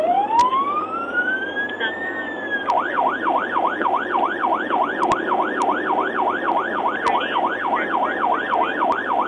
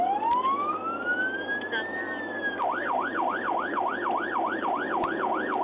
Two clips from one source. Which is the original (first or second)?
second